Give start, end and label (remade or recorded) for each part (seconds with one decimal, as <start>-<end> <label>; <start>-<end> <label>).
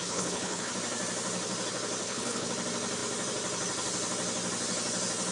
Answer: 0.0-0.7 remade; 0.7-2.0 recorded; 2.0-2.5 remade; 2.5-5.3 recorded